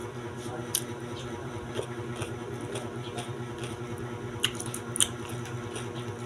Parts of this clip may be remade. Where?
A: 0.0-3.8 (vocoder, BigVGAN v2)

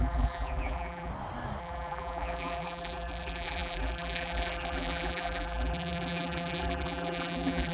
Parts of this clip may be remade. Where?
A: 0.0-1.1 (vocoder, BigVGAN v2); 1.6-7.7

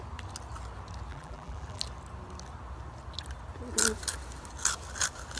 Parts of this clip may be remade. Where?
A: 1.1-1.8 (vocoder, BigVGAN v2)